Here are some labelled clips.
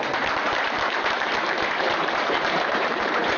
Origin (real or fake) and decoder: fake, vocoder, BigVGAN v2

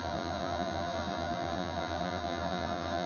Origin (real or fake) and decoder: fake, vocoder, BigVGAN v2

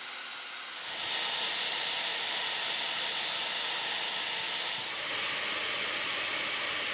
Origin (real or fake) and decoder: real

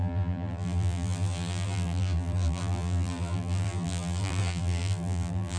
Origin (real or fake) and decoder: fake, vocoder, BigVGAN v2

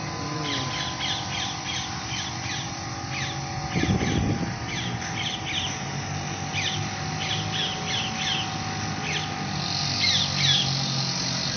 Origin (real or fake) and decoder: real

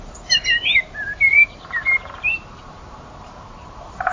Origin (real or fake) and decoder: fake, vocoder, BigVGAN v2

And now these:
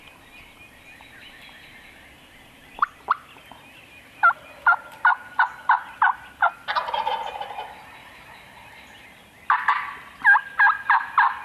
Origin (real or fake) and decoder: real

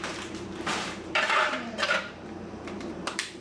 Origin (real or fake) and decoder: fake, vocoder, BigVGAN v2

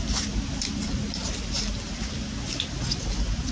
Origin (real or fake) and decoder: real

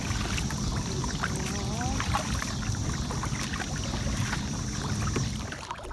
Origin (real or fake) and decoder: real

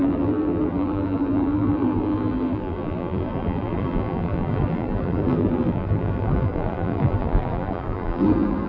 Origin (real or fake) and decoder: fake, vocoder, BigVGAN v2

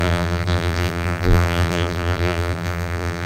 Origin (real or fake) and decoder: fake, vocoder, BigVGAN v2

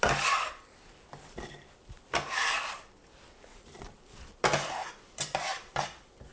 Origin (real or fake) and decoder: fake, vocoder, BigVGAN v2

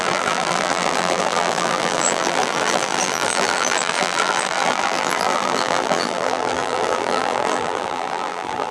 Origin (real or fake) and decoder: fake, vocoder, BigVGAN v2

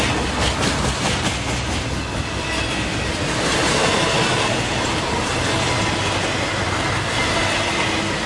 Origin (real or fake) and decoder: real